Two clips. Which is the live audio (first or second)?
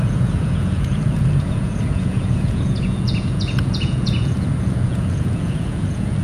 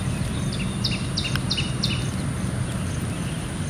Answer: second